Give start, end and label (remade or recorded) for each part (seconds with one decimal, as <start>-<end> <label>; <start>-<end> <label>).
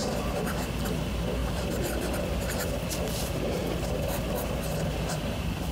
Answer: 0.0-0.8 remade; 0.8-1.4 recorded; 1.4-2.2 remade; 2.2-5.7 recorded